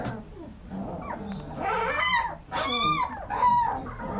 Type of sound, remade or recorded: recorded